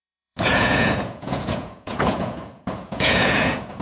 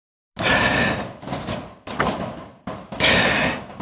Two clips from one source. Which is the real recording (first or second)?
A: second